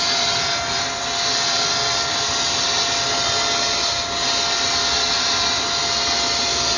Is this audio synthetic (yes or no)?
no